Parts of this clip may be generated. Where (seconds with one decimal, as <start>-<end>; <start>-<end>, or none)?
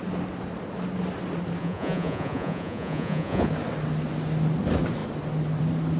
1.6-3.5